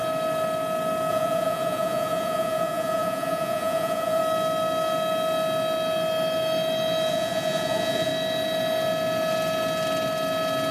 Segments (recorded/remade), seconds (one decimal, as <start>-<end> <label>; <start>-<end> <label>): 0.0-1.1 recorded; 1.1-4.2 remade; 4.2-7.1 recorded; 7.1-8.1 remade; 8.1-10.7 recorded